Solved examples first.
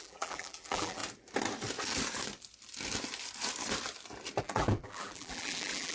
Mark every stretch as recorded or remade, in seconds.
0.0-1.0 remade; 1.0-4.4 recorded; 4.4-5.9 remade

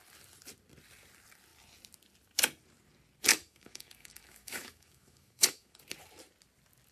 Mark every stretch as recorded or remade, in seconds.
0.0-3.3 recorded; 3.3-5.8 remade; 5.8-6.9 recorded

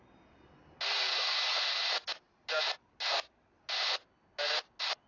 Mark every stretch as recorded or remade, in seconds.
0.0-5.1 recorded

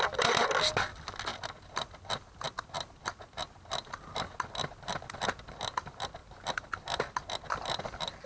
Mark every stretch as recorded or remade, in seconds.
0.0-8.3 recorded

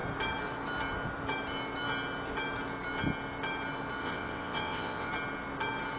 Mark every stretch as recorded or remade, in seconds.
0.0-4.0 recorded; 4.0-5.1 remade; 5.1-6.0 recorded